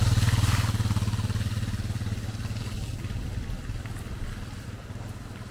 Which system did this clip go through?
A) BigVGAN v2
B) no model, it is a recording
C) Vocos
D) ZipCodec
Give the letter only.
B